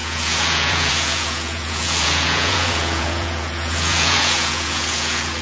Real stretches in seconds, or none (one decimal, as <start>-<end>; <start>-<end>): none